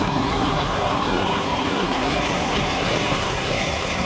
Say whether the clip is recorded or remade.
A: remade